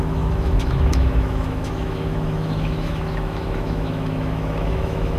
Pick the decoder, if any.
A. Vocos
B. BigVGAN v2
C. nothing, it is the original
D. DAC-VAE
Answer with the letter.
D